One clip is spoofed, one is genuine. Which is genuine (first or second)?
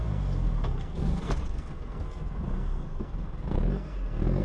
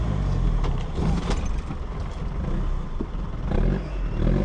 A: second